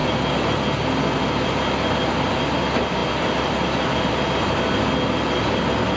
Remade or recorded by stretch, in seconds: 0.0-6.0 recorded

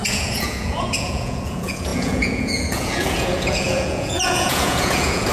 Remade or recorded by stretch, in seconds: 0.0-5.3 remade

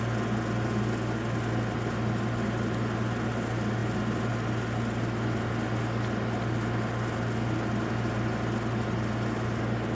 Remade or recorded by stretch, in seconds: 0.0-9.9 recorded

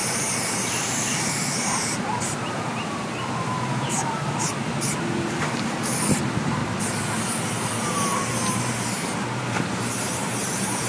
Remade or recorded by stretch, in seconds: 0.0-6.6 remade; 6.6-7.8 recorded; 7.8-10.9 remade

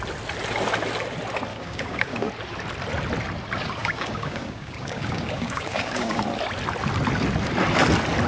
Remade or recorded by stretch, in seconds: 0.0-1.5 recorded; 1.5-2.3 remade; 2.3-3.8 recorded; 3.8-6.2 remade; 6.2-8.3 recorded

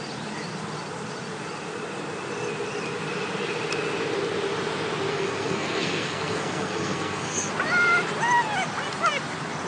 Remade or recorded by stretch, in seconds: 0.0-5.1 recorded; 5.1-7.5 remade; 7.5-9.7 recorded

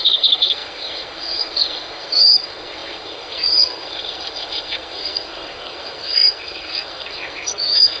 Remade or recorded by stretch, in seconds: 0.0-8.0 remade

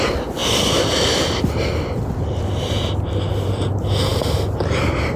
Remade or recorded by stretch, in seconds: 0.0-5.2 recorded